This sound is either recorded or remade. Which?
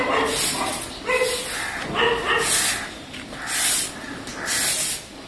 recorded